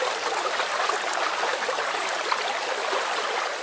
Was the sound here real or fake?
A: fake